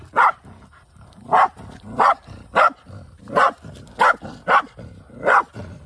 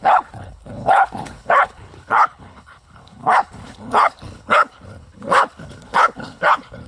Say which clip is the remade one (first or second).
second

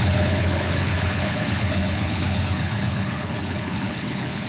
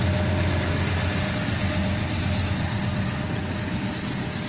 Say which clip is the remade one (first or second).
first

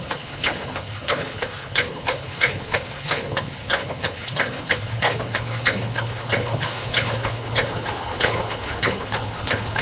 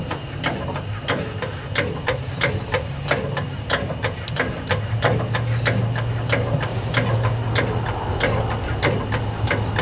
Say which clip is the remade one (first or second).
first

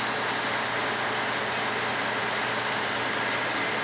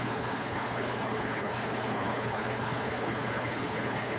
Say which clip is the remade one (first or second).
second